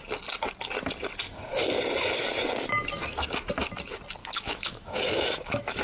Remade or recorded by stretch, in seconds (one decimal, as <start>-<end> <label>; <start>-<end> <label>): 0.0-4.2 recorded; 4.2-5.8 remade